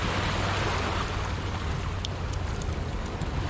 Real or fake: real